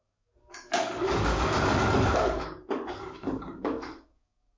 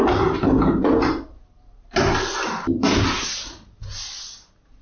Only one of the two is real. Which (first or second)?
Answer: second